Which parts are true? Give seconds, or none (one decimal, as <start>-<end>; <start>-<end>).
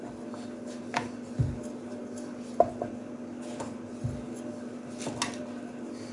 0.0-6.1